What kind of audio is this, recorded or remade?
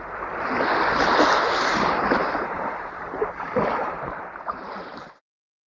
recorded